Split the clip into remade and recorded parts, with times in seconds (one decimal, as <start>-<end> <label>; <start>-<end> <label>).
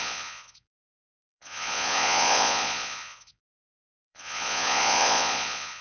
0.0-5.8 remade